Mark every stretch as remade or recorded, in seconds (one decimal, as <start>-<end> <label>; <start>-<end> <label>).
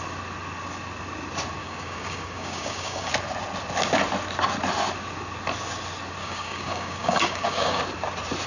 0.0-1.6 recorded; 1.6-3.1 remade; 3.1-6.2 recorded; 6.2-7.8 remade; 7.8-8.5 recorded